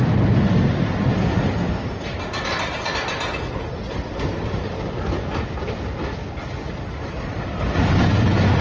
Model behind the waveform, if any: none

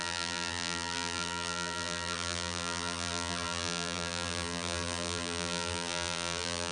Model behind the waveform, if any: vocoder, BigVGAN v2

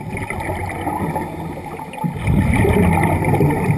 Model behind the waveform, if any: none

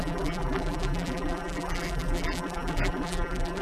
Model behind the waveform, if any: vocoder, BigVGAN v2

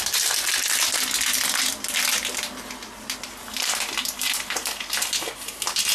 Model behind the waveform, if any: none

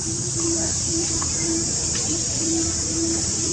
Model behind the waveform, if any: vocoder, BigVGAN v2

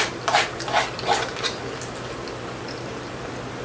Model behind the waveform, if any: none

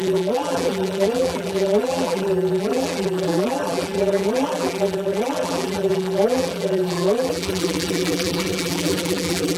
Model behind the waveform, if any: vocoder, BigVGAN v2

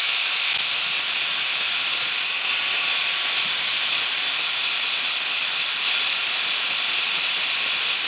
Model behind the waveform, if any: none